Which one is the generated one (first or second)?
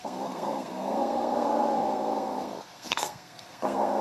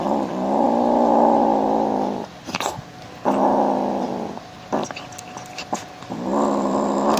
first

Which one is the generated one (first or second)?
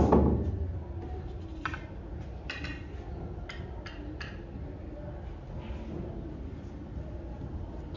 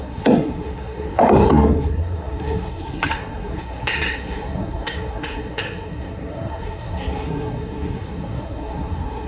second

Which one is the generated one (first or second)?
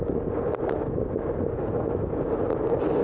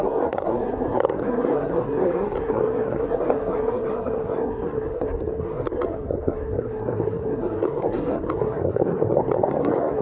second